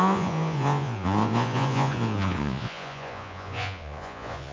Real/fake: fake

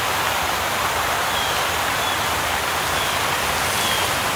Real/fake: real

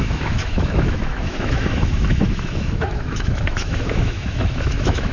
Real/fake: fake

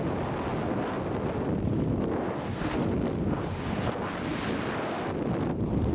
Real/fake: real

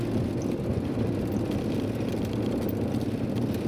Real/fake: real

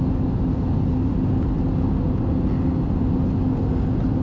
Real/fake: real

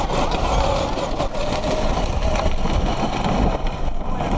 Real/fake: real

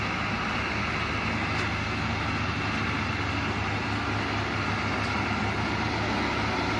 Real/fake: real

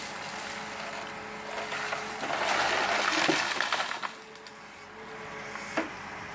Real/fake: real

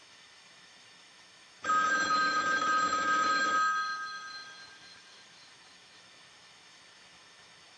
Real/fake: fake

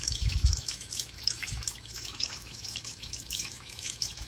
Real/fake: fake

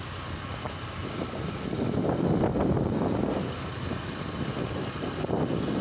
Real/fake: real